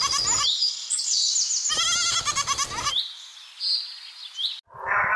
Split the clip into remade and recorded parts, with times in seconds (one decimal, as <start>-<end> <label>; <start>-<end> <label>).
0.0-0.6 recorded; 0.6-1.3 remade; 1.3-5.2 recorded

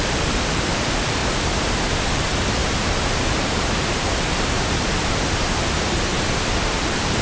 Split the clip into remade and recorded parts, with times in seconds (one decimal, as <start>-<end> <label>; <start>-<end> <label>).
0.0-1.2 remade; 1.2-2.0 recorded; 2.0-6.1 remade; 6.1-6.8 recorded; 6.8-7.2 remade

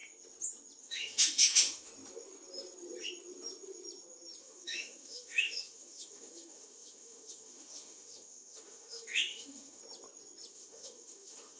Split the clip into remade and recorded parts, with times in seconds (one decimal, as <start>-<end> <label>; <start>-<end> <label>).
0.0-0.8 recorded; 0.8-1.9 remade; 1.9-4.4 recorded; 4.4-9.8 remade; 9.8-10.5 recorded; 10.5-11.6 remade

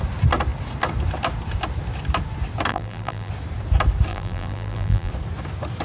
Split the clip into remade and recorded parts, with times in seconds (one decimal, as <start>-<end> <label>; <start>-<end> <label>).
0.0-2.7 recorded; 2.7-3.3 remade; 3.3-4.1 recorded; 4.1-5.1 remade; 5.1-5.8 recorded